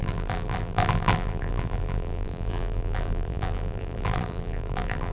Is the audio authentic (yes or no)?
no